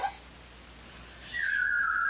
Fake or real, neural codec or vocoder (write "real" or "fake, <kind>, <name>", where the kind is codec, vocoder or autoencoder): real